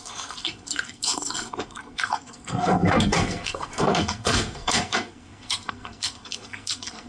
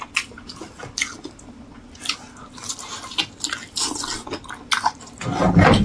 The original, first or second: second